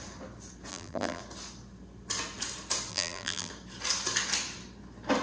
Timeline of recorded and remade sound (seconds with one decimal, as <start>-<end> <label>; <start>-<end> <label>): 0.0-0.7 recorded; 0.7-1.2 remade; 1.2-2.9 recorded; 2.9-3.5 remade; 3.5-5.2 recorded